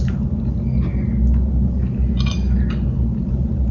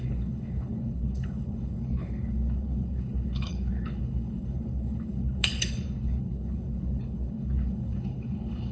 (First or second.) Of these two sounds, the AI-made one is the second